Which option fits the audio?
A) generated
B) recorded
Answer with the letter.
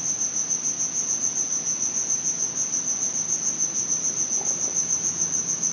B